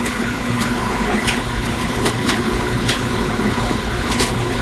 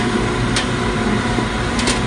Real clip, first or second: second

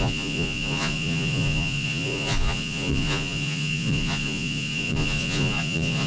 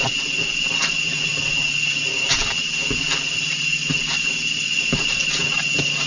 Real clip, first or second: second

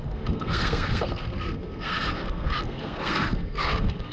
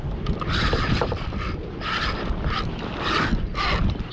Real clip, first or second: second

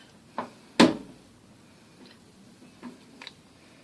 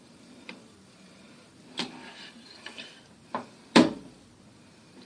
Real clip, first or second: first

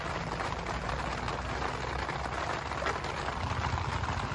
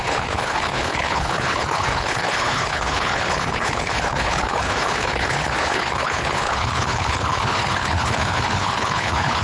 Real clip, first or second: first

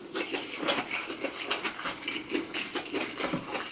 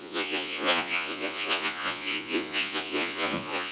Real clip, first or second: first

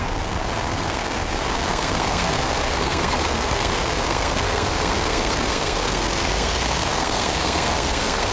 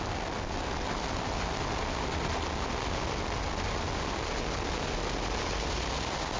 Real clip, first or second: second